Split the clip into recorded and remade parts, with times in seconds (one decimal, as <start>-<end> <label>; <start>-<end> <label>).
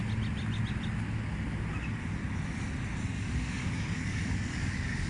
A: 0.0-3.1 recorded; 3.1-5.1 remade